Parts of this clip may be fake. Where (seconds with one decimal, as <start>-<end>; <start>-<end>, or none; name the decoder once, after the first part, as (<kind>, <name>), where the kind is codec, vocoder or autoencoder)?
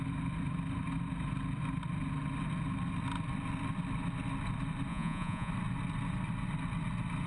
4.9-5.5 (vocoder, Vocos)